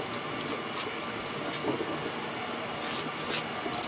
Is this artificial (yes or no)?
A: no